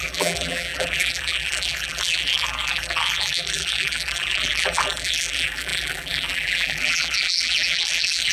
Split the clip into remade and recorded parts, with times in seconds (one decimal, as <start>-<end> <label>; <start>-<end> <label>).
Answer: 0.0-8.3 remade

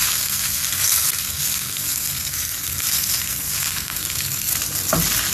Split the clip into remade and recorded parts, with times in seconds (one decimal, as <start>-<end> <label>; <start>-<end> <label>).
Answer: 0.0-4.5 remade; 4.5-5.3 recorded

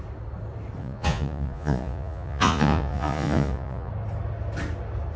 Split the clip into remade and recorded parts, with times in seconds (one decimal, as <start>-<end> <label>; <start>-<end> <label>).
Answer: 0.0-0.8 recorded; 0.8-3.9 remade; 3.9-5.2 recorded

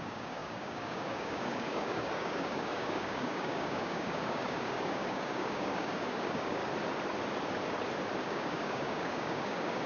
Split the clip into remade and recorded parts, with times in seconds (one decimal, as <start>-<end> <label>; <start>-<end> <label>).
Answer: 0.0-6.6 remade; 6.6-8.2 recorded; 8.2-9.9 remade

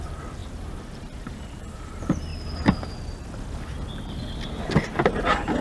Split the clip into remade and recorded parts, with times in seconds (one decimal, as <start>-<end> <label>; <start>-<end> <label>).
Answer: 0.0-2.3 remade; 2.3-3.9 recorded; 3.9-5.6 remade